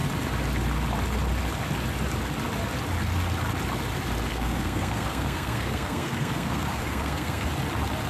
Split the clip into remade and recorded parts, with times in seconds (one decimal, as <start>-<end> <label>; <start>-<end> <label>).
0.0-4.3 recorded; 4.3-7.5 remade; 7.5-8.1 recorded